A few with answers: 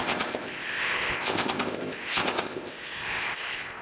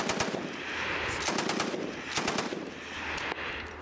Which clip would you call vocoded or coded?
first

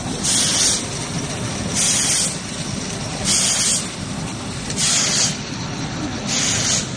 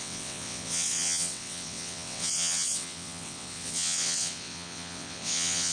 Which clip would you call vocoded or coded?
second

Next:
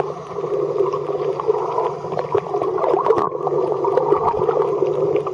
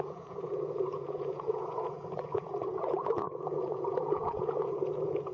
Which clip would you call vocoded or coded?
second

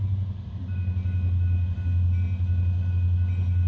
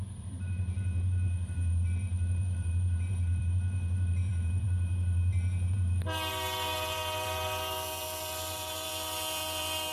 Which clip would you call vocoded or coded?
second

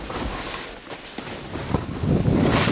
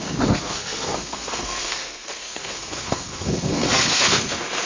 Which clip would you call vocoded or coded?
second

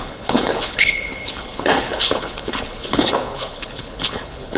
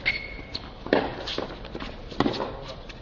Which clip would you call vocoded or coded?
first